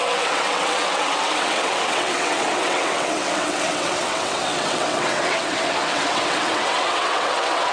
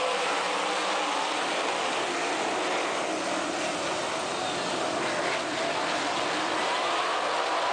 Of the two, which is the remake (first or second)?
first